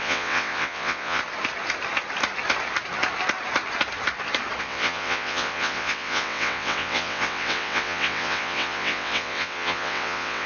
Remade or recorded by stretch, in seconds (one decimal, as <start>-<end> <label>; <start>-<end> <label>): 0.0-1.2 remade; 1.2-4.6 recorded; 4.6-10.5 remade